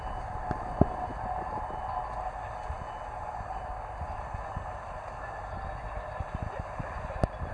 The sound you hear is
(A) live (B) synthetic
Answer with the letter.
A